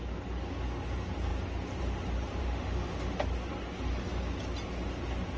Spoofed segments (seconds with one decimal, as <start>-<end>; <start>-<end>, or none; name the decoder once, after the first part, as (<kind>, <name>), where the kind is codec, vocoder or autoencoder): 2.4-3.2 (autoencoder, DAC-VAE)